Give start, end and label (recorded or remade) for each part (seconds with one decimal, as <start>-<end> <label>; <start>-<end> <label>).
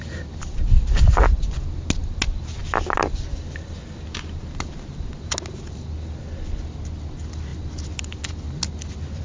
0.0-9.2 recorded